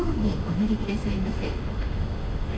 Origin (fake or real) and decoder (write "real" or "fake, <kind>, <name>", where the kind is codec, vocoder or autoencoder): fake, autoencoder, DAC-VAE